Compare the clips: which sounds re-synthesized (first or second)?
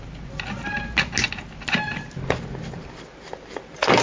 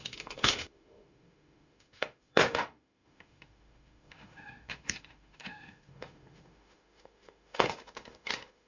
second